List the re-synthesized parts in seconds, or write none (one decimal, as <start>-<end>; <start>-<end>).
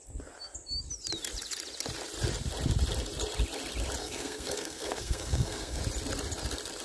4.0-5.8